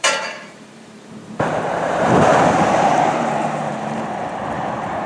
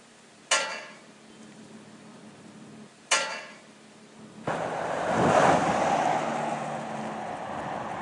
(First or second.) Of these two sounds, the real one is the second